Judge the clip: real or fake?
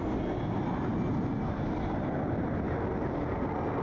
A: real